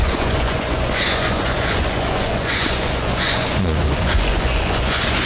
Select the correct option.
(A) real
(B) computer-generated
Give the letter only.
B